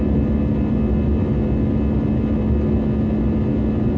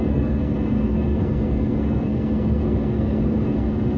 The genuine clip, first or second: first